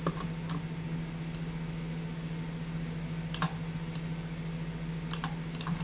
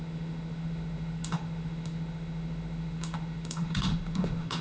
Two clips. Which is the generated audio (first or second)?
second